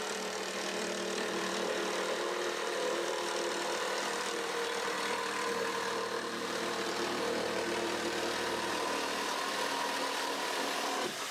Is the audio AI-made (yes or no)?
yes